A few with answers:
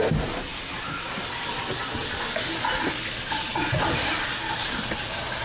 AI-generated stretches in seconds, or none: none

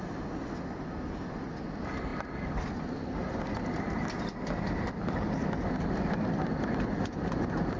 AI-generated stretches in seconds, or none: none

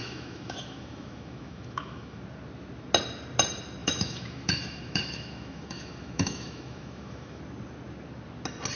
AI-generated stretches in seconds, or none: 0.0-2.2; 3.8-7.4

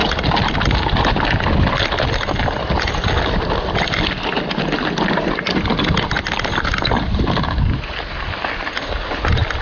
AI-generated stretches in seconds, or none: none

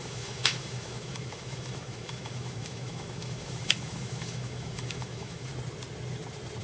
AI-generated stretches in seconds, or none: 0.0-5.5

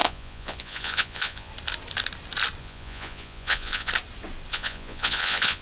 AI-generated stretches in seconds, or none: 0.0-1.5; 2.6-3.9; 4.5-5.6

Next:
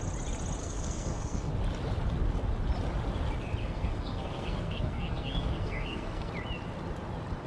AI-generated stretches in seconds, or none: 0.6-1.5; 3.6-6.3

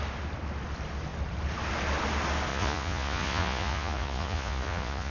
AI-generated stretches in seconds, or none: 2.5-5.1